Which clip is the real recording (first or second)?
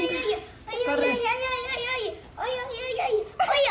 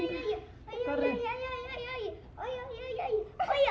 second